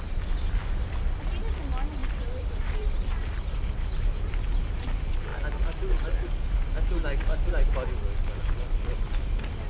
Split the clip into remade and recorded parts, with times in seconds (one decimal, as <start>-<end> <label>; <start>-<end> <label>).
0.0-2.0 recorded; 2.0-4.2 remade; 4.2-9.7 recorded